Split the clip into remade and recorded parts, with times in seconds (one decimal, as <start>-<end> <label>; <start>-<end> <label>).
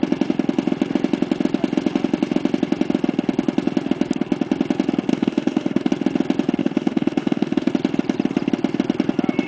0.0-5.1 recorded; 5.1-5.9 remade; 5.9-6.6 recorded; 6.6-7.7 remade; 7.7-9.5 recorded